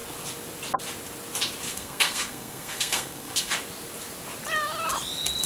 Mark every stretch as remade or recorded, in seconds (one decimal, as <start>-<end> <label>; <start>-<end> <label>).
0.0-1.7 recorded; 1.7-3.5 remade; 3.5-5.5 recorded